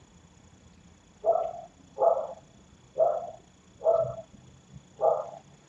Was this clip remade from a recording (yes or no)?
no